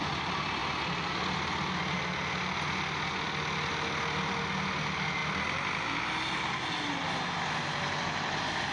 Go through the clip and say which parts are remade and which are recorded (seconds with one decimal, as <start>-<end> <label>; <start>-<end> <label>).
0.0-8.7 recorded